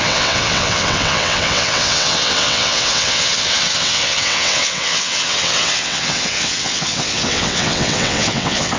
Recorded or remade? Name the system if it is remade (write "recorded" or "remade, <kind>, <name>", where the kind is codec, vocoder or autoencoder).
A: remade, vocoder, WaveNeXt